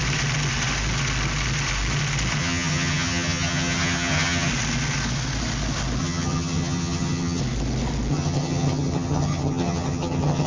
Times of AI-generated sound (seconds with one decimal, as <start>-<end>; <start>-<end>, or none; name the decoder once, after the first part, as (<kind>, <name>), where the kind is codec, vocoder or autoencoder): 2.4-4.5 (vocoder, HiFi-GAN); 6.0-7.4; 8.1-10.5